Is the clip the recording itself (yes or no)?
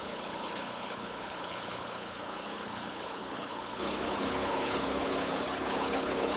no